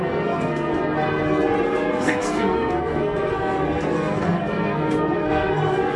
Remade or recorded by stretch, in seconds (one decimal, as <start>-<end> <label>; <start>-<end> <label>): 0.0-0.7 remade; 0.7-1.6 recorded; 1.6-6.0 remade